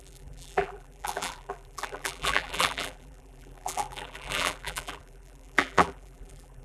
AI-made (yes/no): yes